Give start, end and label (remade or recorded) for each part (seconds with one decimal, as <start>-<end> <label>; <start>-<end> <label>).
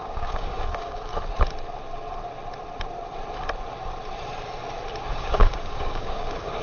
0.0-1.1 remade; 1.1-5.1 recorded; 5.1-6.6 remade